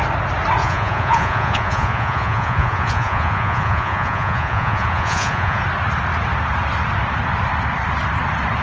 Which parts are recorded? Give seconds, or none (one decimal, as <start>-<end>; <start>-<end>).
0.0-0.6; 5.6-8.6